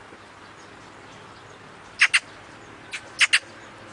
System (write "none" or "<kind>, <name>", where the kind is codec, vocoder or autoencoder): none